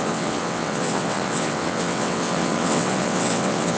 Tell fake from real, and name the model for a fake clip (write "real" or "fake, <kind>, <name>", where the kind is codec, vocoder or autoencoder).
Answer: fake, vocoder, WaveNeXt